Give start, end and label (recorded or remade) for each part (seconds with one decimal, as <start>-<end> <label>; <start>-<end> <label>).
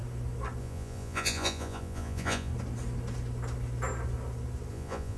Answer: 0.0-0.6 recorded; 0.6-2.5 remade; 2.5-4.7 recorded; 4.7-5.2 remade